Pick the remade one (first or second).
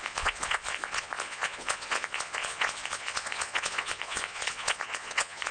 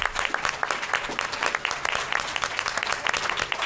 first